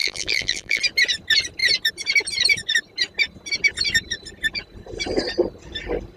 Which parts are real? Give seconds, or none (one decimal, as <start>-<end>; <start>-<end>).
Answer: 0.8-6.2